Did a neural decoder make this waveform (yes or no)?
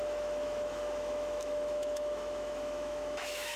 yes